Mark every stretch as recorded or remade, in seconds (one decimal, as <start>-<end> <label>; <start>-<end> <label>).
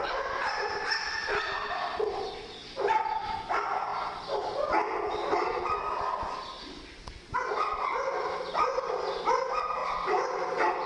0.0-10.9 recorded